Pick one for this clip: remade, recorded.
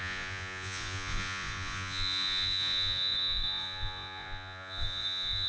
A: remade